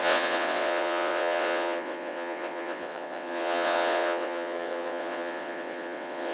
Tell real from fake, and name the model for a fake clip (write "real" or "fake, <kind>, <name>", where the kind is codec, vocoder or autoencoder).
fake, vocoder, WaveNeXt